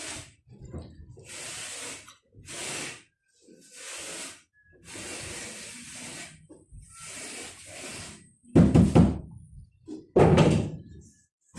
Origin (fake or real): real